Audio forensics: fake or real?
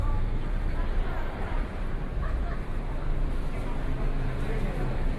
fake